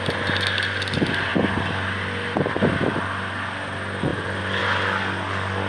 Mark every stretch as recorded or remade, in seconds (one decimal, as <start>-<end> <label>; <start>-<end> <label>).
0.0-5.7 recorded